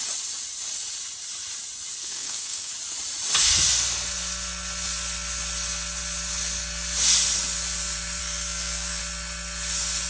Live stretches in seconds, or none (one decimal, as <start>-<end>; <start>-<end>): 0.0-2.0; 2.7-8.2; 9.0-10.1